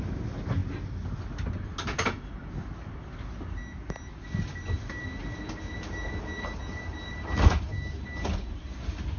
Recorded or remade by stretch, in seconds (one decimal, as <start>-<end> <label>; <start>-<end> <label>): 0.0-9.2 recorded